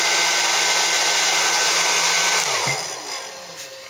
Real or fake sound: real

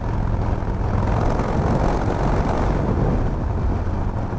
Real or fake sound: real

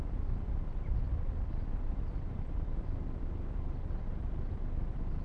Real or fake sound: real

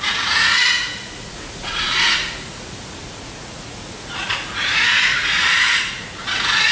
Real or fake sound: fake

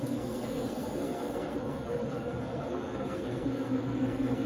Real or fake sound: fake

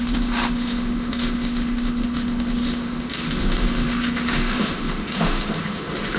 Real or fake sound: fake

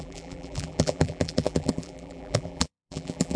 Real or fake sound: fake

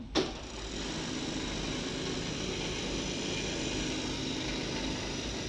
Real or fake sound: real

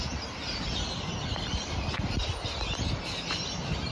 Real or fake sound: real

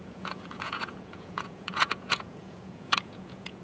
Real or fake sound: fake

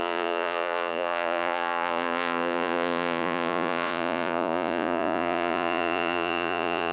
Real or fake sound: fake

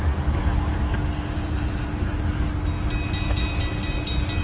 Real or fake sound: real